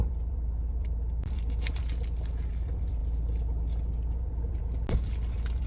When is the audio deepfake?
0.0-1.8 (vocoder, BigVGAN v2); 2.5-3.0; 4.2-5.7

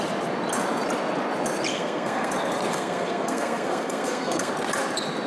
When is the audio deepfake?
1.7-2.3 (codec, SNAC); 2.7-4.5

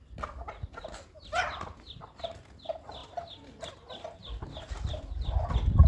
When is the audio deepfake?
none

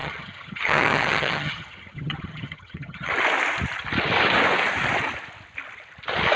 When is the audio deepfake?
0.0-3.1 (vocoder, HiFi-GAN)

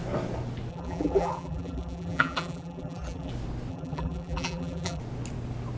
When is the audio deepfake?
0.7-3.3 (vocoder, BigVGAN v2); 3.7-5.0

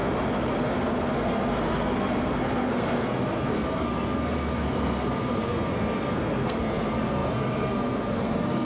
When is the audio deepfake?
0.6-8.6 (codec, SNAC)

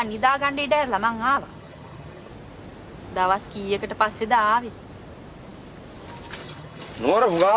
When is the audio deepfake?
1.5-2.3 (vocoder, HiFi-GAN); 6.4-6.9

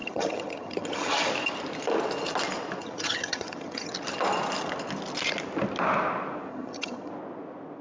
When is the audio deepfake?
0.0-1.3 (vocoder, HiFi-GAN); 2.8-3.9; 6.5-7.1